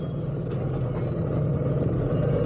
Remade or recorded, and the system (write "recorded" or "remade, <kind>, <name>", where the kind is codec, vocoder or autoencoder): recorded